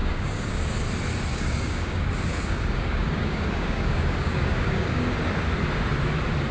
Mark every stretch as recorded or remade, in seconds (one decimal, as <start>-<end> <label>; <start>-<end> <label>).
0.0-0.9 remade; 0.9-1.3 recorded; 1.3-5.2 remade; 5.2-6.5 recorded